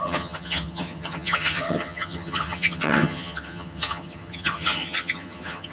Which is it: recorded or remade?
remade